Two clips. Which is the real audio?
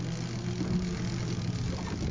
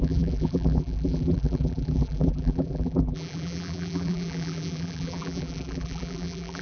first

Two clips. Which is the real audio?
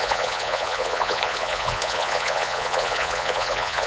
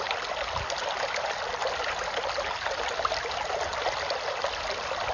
second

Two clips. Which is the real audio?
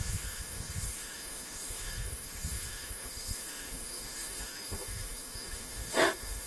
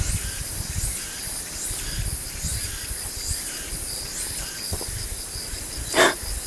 second